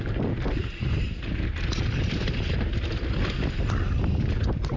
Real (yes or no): yes